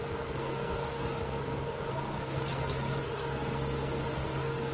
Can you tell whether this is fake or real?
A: fake